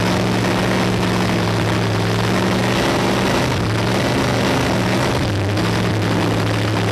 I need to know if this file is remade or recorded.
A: recorded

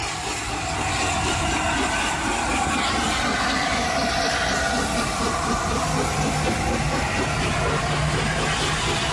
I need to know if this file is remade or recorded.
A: recorded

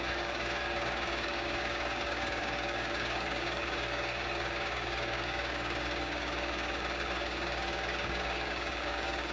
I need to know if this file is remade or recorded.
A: remade